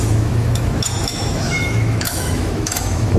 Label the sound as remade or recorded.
remade